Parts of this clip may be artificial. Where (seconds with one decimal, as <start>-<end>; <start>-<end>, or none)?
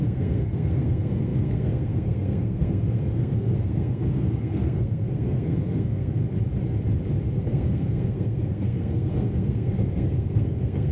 0.0-6.2; 7.3-10.9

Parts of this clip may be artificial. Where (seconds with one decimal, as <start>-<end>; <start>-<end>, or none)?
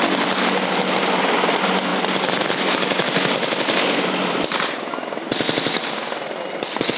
none